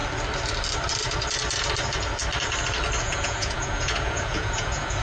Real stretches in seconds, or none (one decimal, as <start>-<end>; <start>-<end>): 0.0-3.0